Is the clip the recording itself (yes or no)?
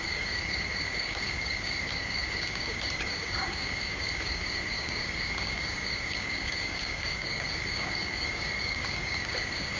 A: no